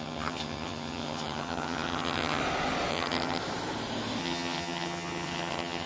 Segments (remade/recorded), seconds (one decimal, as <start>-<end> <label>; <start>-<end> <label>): 0.0-2.4 remade; 2.4-2.9 recorded; 2.9-3.4 remade; 3.4-4.2 recorded; 4.2-5.9 remade